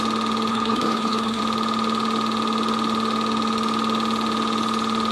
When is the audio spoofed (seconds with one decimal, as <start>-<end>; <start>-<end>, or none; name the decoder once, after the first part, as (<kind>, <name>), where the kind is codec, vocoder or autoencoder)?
0.5-1.4 (codec, SNAC)